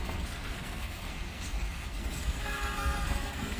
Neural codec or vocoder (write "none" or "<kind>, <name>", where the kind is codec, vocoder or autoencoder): codec, SNAC